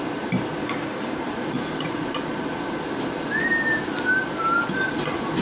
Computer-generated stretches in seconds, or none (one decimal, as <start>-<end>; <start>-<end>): 0.6-1.2